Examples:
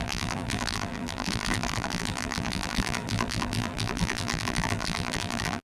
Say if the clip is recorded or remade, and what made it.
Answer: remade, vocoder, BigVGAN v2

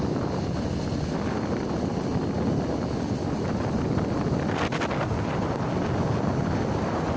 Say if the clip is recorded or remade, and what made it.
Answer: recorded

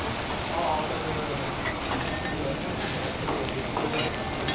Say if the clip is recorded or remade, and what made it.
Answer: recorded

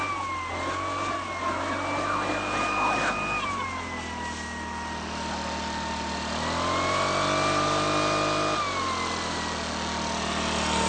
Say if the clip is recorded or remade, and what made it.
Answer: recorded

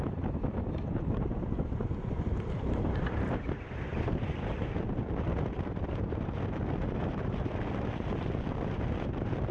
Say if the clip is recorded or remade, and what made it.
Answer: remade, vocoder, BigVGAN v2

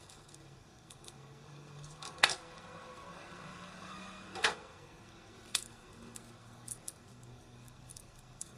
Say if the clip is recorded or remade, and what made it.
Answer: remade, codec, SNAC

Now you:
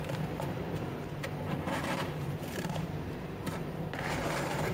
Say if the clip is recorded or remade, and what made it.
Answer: remade, vocoder, BigVGAN v2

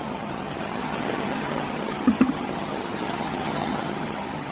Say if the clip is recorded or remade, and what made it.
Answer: remade, vocoder, HiFi-GAN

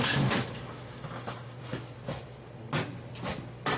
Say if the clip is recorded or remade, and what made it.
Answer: recorded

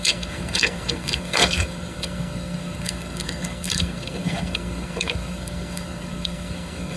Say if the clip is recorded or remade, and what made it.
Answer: remade, codec, SNAC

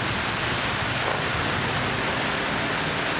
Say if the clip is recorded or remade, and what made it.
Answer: recorded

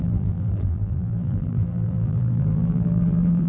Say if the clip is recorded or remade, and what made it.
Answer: remade, vocoder, BigVGAN v2